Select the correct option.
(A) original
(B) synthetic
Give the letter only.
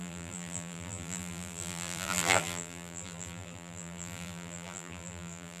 B